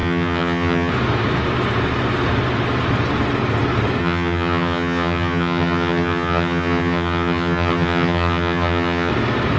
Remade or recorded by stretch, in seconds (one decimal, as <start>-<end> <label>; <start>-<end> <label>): 0.0-0.9 remade; 0.9-4.0 recorded; 4.0-9.1 remade; 9.1-9.6 recorded